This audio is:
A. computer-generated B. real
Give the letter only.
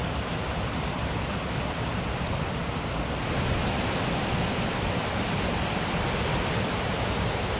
B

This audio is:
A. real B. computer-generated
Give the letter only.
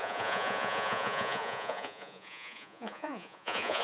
B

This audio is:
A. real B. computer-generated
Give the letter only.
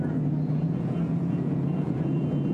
B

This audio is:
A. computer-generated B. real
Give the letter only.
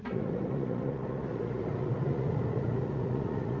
A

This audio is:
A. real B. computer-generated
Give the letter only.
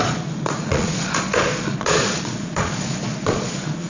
B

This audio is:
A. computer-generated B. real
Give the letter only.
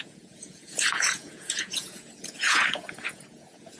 A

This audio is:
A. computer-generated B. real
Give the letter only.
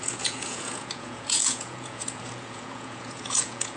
A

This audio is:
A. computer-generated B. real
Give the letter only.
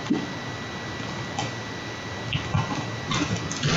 B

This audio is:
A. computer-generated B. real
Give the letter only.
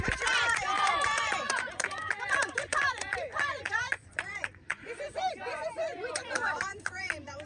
A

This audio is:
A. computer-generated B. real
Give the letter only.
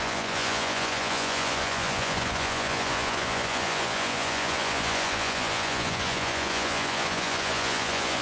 A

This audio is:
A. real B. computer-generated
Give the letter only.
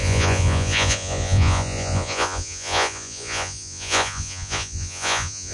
B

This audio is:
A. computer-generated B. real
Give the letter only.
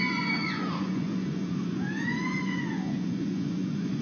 A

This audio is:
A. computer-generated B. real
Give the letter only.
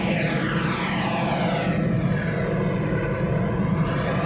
B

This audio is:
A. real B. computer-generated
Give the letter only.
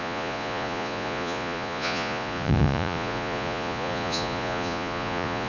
B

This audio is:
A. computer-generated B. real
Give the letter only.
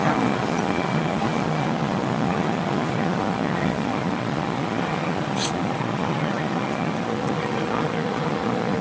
A